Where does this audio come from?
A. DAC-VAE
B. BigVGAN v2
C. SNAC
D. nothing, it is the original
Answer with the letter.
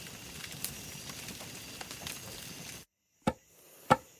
D